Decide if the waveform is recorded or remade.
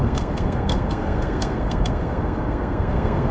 remade